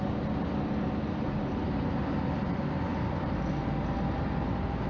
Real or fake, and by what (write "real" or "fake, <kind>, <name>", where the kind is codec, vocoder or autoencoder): real